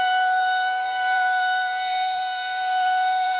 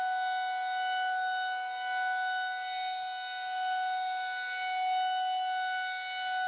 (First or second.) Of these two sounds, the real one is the second